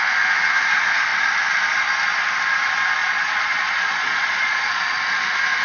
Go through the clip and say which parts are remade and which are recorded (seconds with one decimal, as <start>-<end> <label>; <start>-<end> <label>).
0.0-3.0 recorded; 3.0-4.8 remade; 4.8-5.6 recorded